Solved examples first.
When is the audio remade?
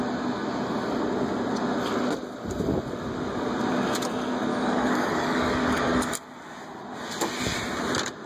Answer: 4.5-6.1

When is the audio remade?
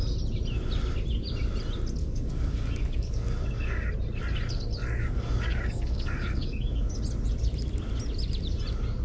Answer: 2.0-3.9; 4.8-6.9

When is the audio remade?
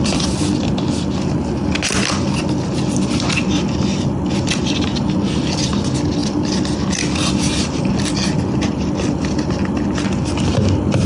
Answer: none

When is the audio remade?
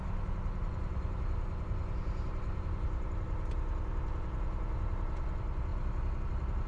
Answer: none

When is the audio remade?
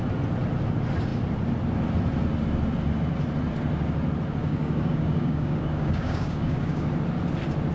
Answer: 4.4-6.9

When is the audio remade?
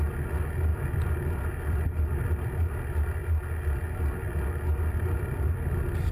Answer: none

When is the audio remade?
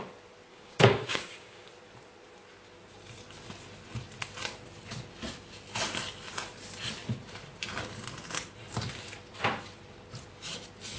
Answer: 0.5-1.7